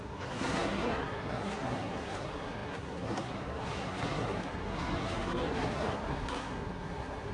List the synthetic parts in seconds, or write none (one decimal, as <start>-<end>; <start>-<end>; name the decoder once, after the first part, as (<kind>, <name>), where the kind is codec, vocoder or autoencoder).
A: 0.0-7.3 (codec, SNAC)